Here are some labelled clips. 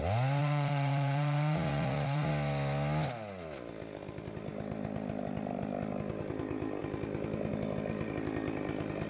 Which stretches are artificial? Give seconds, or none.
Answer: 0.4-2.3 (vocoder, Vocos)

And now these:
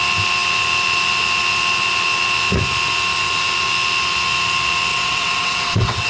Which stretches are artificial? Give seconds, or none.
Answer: 4.9-6.1 (vocoder, WaveNeXt)